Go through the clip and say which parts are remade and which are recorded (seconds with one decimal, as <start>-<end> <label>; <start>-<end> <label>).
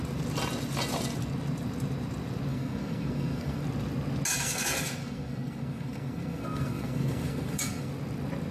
0.0-2.5 recorded; 2.5-3.6 remade; 3.6-4.3 recorded; 4.3-7.9 remade; 7.9-8.5 recorded